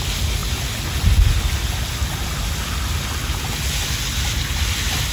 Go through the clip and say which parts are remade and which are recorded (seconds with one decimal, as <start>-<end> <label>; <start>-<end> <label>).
0.0-5.1 recorded